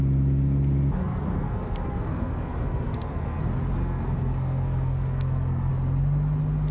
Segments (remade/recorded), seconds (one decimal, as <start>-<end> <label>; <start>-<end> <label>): 0.0-1.0 recorded; 1.0-3.4 remade; 3.4-3.8 recorded; 3.8-5.7 remade; 5.7-6.7 recorded